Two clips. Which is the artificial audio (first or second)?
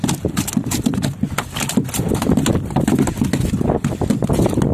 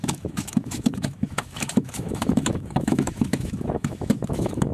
second